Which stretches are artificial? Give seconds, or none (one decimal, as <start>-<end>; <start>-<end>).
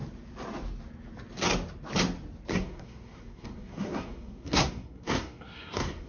2.5-6.1